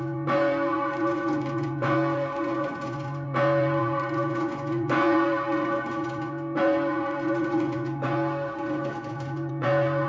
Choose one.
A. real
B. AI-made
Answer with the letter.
B